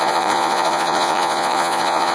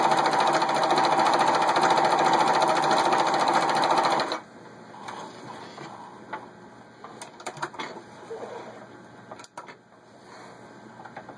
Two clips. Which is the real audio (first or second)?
second